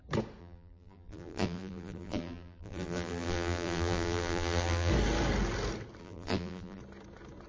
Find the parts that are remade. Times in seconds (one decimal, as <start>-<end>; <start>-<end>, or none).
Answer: 0.4-4.9; 6.0-6.8